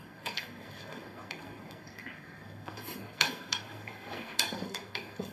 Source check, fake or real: fake